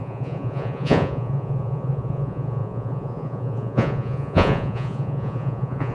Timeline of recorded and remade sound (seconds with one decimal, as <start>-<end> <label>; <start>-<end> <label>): 0.0-5.9 remade